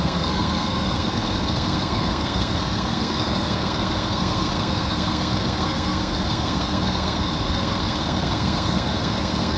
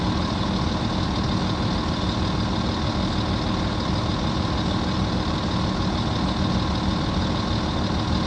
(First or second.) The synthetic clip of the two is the first